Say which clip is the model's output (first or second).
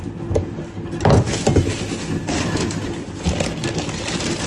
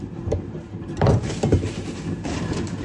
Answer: second